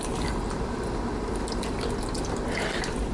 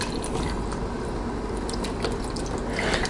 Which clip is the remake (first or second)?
first